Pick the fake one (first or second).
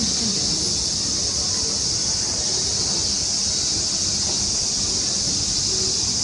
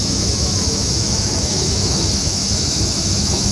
second